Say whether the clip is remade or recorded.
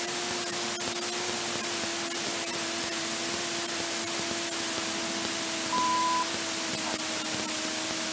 recorded